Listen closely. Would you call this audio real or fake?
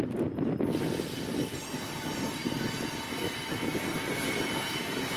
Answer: real